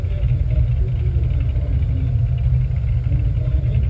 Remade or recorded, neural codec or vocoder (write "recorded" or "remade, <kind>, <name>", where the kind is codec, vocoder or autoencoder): recorded